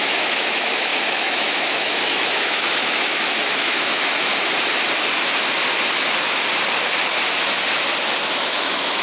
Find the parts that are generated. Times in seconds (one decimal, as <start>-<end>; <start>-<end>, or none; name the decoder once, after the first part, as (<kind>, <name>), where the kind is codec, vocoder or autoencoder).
0.0-4.3 (autoencoder, DAC-VAE); 8.4-9.0